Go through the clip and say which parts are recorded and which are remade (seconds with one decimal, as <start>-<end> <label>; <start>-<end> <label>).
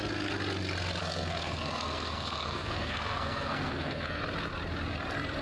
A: 0.0-1.0 recorded; 1.0-4.2 remade; 4.2-5.4 recorded